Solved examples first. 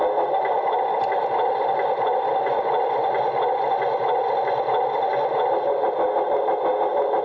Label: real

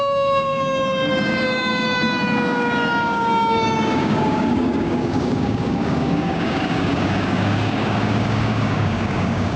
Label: fake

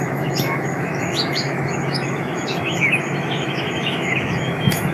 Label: fake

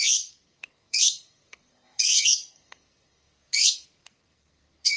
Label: fake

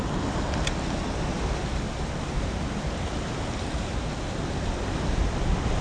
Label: real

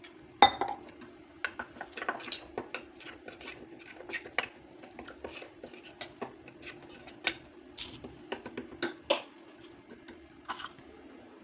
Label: real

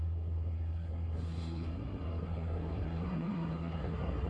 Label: fake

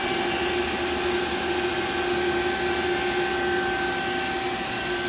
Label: real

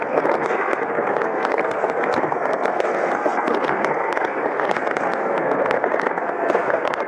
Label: fake